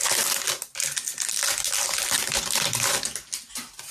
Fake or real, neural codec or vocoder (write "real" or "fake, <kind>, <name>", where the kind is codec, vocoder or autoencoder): real